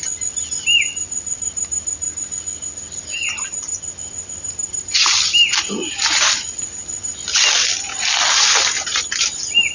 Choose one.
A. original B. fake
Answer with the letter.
A